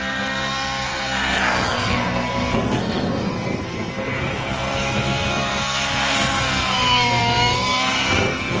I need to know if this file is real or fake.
fake